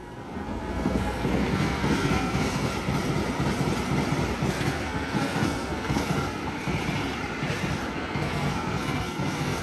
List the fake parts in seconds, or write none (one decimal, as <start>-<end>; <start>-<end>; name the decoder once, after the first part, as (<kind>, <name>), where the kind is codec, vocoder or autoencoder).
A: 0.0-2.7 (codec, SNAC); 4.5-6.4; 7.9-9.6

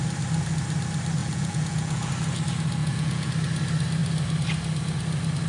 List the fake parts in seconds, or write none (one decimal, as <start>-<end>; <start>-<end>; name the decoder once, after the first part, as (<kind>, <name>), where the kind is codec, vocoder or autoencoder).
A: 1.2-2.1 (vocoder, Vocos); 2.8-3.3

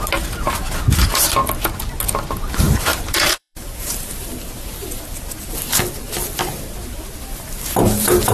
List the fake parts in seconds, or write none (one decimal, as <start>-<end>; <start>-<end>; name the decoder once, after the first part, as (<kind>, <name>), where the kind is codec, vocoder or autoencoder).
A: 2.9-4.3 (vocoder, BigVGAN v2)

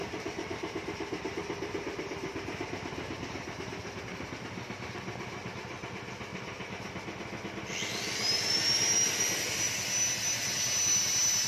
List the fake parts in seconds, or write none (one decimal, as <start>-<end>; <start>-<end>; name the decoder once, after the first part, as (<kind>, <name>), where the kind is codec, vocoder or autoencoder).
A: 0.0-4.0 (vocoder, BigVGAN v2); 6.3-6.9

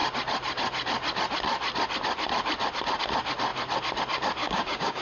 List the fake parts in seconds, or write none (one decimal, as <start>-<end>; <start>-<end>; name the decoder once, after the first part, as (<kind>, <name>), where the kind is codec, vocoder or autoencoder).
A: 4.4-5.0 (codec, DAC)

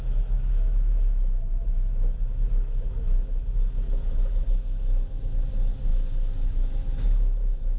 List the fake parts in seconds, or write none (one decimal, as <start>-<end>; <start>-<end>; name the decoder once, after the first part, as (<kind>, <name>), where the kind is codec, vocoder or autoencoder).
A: 0.0-7.8 (autoencoder, DAC-VAE)

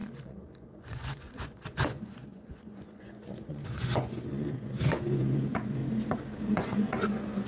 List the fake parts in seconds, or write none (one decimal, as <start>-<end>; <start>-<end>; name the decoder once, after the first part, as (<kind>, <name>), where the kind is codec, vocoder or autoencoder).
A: 0.0-5.8 (vocoder, Vocos); 6.4-7.5

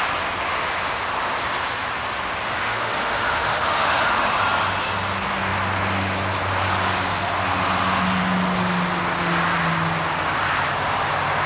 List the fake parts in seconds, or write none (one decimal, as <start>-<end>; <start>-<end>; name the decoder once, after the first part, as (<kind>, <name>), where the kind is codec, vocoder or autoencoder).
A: 2.6-4.3 (autoencoder, DAC-VAE)